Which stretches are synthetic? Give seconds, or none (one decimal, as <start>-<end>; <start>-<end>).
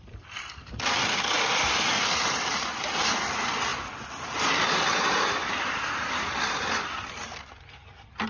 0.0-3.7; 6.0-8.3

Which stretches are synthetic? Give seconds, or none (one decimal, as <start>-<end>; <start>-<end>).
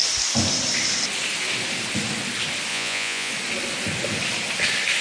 2.7-3.3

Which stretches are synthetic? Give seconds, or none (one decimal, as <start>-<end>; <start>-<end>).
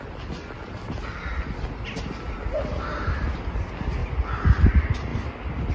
none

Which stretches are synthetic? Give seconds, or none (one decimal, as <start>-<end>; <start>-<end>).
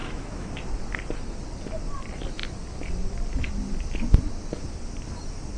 0.0-0.5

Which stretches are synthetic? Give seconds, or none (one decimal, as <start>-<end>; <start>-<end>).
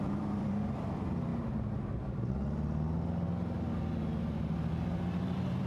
0.0-1.3; 4.7-5.7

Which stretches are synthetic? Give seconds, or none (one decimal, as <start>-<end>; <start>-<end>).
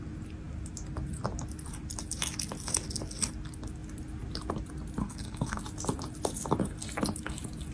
5.0-5.6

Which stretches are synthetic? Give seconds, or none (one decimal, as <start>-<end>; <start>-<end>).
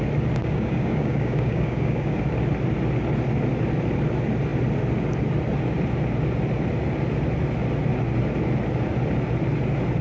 0.4-2.2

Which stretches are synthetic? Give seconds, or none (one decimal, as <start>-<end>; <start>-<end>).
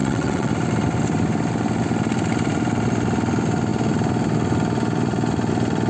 0.0-0.5